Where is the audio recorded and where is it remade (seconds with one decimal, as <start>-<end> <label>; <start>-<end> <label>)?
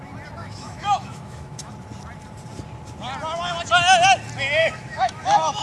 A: 0.0-0.4 recorded; 0.4-1.7 remade; 1.7-4.6 recorded; 4.6-5.6 remade